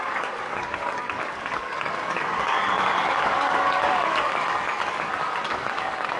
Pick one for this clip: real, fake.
fake